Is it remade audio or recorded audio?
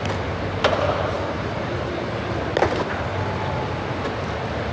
recorded